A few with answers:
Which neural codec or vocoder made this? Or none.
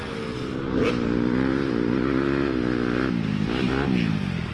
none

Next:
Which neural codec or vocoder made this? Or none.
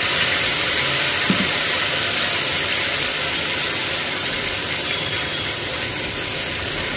none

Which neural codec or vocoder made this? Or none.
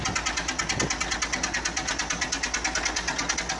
none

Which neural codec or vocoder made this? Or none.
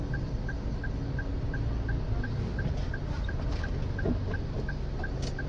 none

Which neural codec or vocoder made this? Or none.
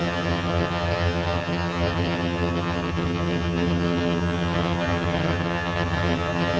vocoder, HiFi-GAN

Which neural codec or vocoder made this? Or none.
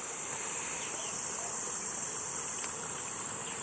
none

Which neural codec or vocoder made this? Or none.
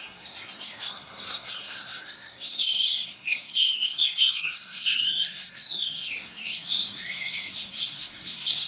codec, SNAC